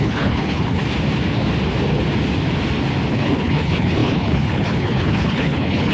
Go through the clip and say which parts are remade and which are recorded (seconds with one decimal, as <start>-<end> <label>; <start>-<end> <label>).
0.0-0.8 remade; 0.8-3.1 recorded; 3.1-5.9 remade